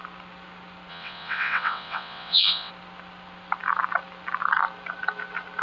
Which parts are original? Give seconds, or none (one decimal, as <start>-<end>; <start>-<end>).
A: 0.0-0.9; 2.7-5.6